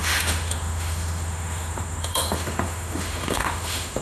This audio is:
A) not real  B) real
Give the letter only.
A